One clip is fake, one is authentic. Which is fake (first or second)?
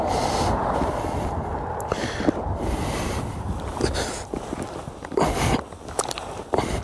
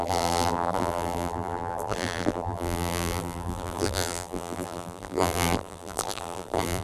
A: second